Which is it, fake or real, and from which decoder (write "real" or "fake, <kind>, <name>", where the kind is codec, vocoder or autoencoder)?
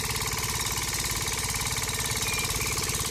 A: real